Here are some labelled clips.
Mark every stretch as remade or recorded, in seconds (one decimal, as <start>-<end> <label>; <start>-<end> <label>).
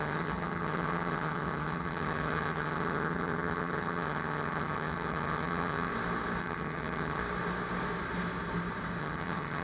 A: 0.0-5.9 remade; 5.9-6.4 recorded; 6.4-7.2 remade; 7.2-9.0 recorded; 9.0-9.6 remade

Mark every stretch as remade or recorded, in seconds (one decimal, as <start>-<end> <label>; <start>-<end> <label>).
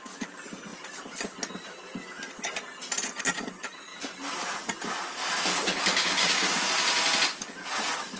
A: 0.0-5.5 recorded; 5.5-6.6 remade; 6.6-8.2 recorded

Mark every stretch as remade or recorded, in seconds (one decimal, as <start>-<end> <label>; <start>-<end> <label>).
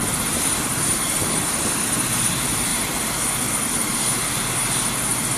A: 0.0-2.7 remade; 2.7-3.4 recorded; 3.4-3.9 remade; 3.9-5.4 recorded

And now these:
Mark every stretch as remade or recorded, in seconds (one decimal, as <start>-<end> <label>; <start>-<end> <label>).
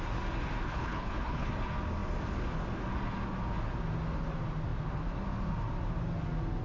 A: 0.0-0.7 recorded; 0.7-1.5 remade; 1.5-6.6 recorded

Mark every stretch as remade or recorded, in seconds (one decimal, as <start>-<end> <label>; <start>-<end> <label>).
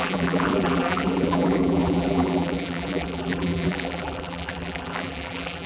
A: 0.0-5.7 remade